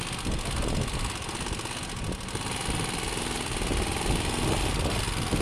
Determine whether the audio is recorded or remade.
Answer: recorded